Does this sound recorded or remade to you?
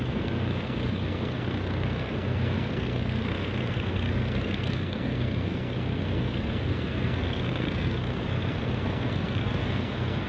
remade